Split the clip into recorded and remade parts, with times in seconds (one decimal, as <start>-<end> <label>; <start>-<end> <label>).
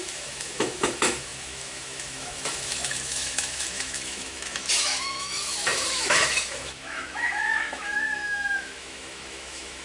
0.0-9.8 remade